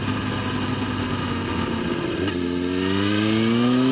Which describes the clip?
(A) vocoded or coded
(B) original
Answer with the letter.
B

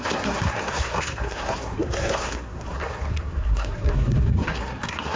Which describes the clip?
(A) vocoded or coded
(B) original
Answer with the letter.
A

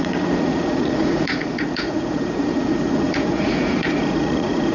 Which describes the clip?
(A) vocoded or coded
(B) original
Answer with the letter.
A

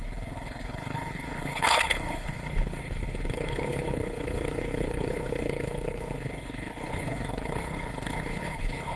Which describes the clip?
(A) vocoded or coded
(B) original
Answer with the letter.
A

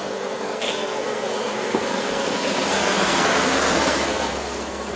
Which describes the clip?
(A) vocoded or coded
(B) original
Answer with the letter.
A